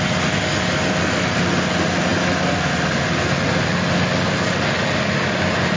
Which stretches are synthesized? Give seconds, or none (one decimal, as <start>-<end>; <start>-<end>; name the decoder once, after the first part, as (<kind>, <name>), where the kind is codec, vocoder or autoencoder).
none